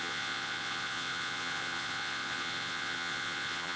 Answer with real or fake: fake